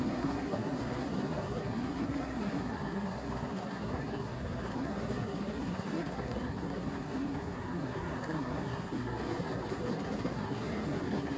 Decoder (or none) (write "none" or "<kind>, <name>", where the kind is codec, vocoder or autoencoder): codec, SNAC